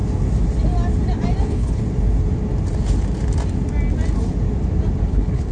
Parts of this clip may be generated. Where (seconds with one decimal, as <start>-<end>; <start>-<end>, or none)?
1.4-1.8; 5.1-5.5